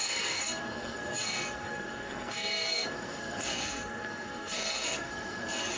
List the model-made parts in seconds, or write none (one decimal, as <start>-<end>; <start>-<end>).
0.0-5.8